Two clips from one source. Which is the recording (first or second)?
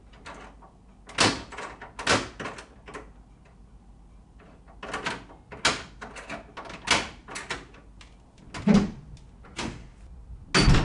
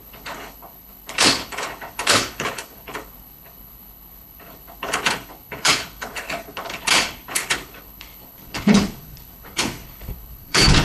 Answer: first